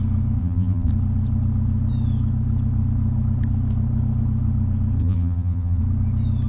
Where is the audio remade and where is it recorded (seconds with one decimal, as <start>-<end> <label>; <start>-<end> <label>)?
0.0-0.4 recorded; 0.4-0.9 remade; 0.9-5.0 recorded; 5.0-5.8 remade; 5.8-6.5 recorded